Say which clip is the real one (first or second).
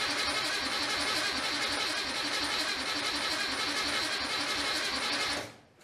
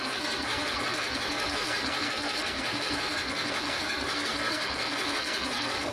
first